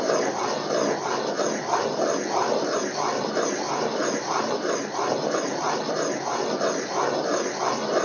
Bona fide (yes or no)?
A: yes